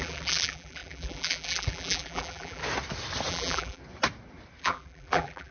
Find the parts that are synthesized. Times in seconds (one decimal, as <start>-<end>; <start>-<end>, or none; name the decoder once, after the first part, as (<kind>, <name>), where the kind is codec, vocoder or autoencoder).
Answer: 0.0-2.6 (vocoder, BigVGAN v2); 3.3-3.8; 4.6-5.5